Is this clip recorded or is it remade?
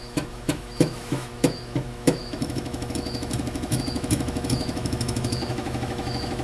remade